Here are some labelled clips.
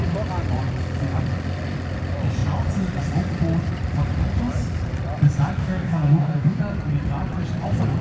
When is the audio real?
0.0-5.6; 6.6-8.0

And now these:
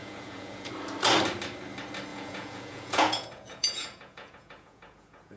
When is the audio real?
0.7-2.1

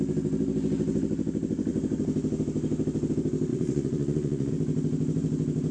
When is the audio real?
0.0-3.5; 4.5-5.7